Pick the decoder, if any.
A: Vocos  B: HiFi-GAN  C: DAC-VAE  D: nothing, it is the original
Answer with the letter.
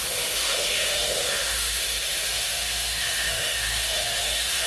C